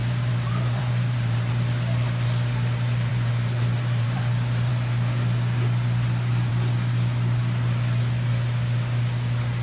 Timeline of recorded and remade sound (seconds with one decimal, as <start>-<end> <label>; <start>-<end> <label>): 0.0-1.5 remade; 1.5-3.1 recorded; 3.1-4.2 remade; 4.2-9.6 recorded